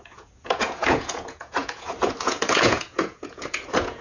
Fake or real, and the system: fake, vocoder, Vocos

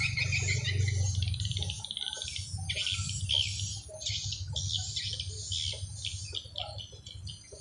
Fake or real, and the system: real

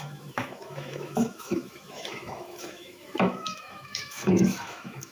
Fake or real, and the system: fake, autoencoder, DAC-VAE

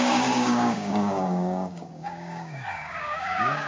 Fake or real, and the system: fake, codec, DAC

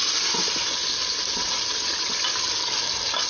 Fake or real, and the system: real